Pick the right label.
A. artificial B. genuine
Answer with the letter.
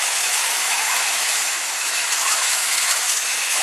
A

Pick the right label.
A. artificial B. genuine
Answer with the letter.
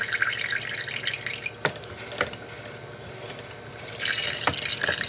B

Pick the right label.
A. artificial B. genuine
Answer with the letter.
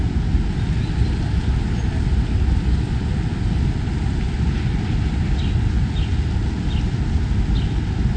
B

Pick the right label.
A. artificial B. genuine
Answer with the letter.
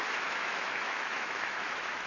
A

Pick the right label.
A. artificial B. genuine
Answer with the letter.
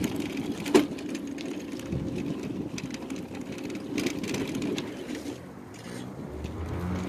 B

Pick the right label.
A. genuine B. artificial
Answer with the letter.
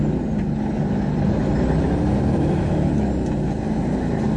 A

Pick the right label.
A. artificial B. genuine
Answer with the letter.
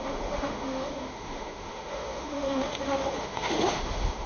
A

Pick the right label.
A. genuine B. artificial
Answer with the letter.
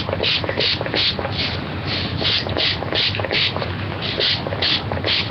A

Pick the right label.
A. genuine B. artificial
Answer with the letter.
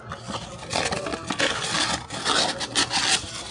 A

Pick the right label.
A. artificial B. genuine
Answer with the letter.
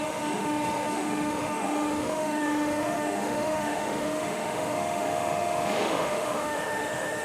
A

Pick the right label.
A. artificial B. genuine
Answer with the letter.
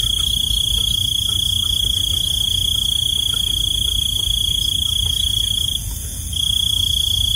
B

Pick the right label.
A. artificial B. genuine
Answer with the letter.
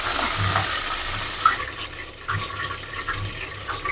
B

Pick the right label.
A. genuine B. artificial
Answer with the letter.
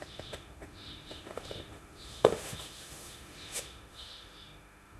B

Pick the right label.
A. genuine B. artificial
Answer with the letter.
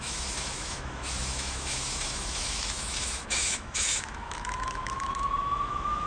B